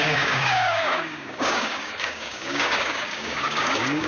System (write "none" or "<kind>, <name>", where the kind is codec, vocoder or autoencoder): codec, DAC